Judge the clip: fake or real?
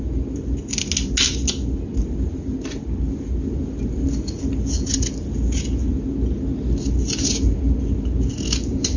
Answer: real